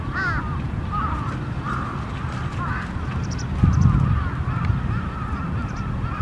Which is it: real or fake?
fake